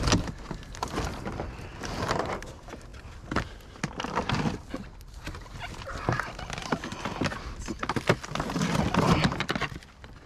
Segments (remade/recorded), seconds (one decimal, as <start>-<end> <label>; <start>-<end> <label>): 0.0-10.3 recorded